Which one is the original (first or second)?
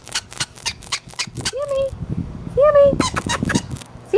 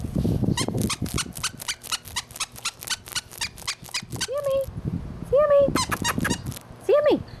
second